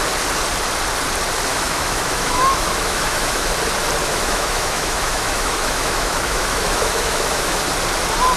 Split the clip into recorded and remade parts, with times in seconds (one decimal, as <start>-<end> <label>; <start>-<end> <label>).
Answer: 0.0-1.5 recorded; 1.5-3.5 remade; 3.5-4.0 recorded; 4.0-7.6 remade; 7.6-8.4 recorded

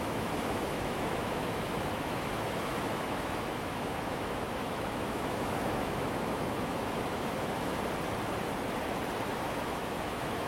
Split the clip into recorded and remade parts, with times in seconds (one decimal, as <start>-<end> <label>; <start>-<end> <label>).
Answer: 0.0-7.7 remade; 7.7-9.4 recorded; 9.4-10.5 remade

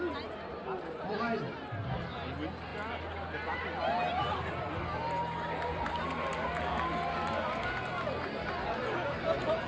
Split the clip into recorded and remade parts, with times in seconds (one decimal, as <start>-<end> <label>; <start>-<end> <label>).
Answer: 0.0-9.7 recorded

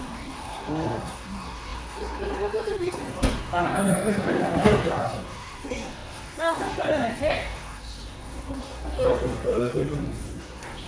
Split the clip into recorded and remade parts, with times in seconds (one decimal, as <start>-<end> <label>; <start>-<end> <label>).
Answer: 0.0-10.9 remade

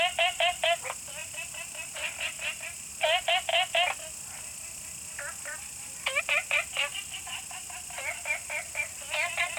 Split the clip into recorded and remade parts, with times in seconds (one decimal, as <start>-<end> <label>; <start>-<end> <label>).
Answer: 0.0-1.2 recorded; 1.2-2.9 remade; 2.9-6.9 recorded; 6.9-8.9 remade; 8.9-9.6 recorded